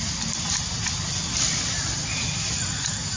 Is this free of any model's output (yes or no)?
yes